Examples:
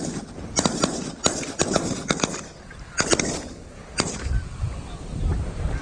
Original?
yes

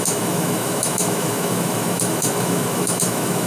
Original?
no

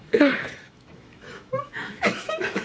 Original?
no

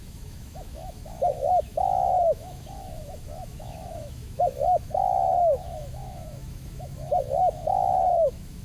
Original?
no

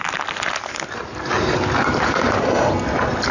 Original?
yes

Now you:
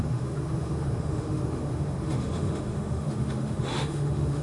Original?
no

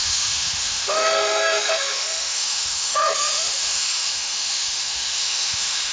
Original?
no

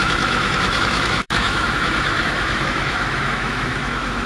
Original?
no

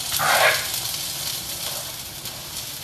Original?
yes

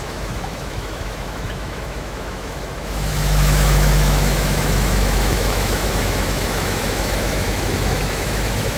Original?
no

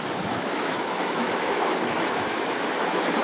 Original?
no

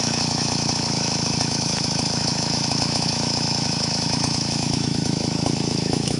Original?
no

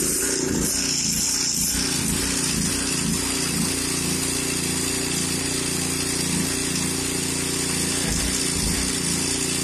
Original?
yes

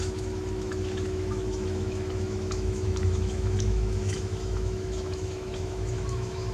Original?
no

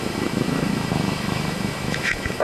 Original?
no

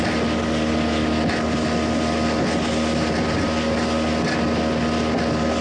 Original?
yes